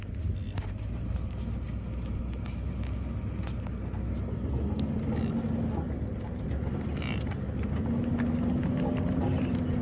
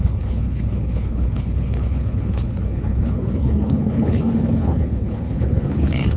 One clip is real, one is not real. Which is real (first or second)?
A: first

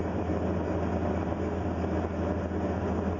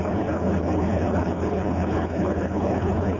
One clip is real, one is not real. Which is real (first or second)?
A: first